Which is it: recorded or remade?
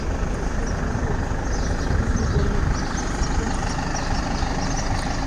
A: recorded